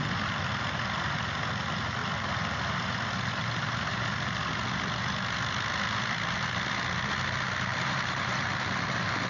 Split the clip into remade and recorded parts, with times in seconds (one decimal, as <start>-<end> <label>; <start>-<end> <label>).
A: 0.0-7.7 recorded; 7.7-8.4 remade; 8.4-9.3 recorded